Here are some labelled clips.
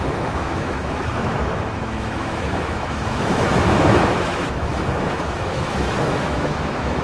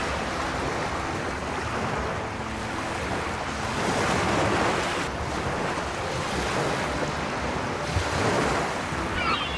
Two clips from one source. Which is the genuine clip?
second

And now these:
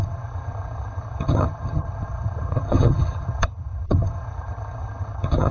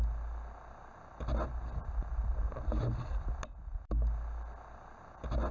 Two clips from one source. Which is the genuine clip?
second